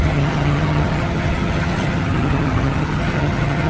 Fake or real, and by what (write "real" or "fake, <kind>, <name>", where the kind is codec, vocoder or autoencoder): fake, vocoder, HiFi-GAN